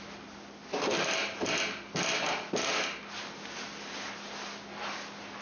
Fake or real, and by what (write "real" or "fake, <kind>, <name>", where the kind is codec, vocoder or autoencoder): real